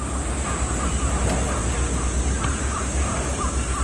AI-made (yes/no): no